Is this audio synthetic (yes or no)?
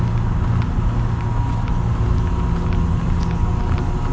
no